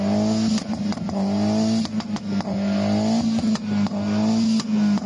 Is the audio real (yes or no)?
yes